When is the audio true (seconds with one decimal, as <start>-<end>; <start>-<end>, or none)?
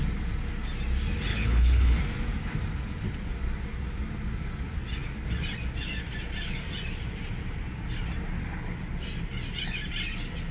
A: 0.0-1.3; 2.0-10.5